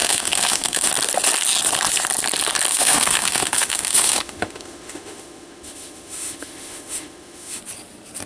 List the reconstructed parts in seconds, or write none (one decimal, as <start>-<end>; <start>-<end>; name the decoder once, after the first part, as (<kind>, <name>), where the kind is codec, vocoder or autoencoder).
0.0-0.9 (autoencoder, DAC-VAE); 2.7-7.6